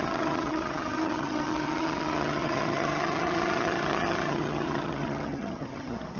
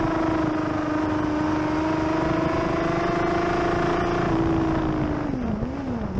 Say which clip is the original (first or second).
second